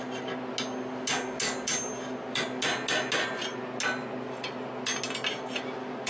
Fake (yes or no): no